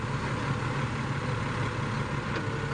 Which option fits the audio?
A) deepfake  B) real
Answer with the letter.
B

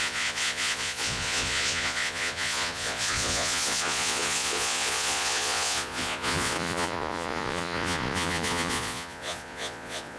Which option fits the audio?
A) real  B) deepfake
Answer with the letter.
B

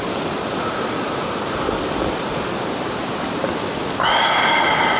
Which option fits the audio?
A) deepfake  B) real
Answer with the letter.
B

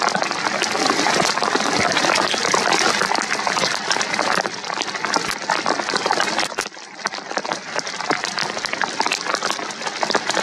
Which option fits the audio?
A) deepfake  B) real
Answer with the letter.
B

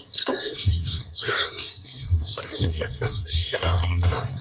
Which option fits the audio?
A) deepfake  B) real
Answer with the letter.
A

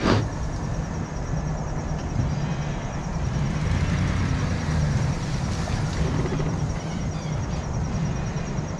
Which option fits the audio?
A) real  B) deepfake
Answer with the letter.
A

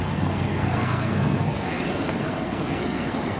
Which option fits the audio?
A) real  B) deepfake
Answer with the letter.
B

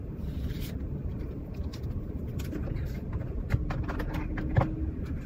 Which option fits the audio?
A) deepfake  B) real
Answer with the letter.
B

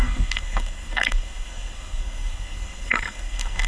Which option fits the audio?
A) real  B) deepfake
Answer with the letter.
B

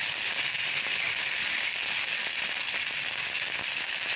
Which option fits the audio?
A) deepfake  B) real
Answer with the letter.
A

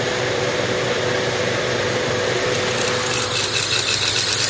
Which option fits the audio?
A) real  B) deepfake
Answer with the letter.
A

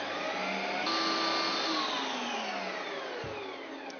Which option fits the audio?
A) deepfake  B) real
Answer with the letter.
B